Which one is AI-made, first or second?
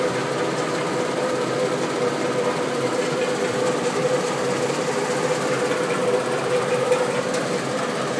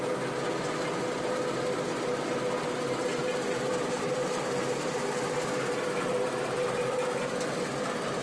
first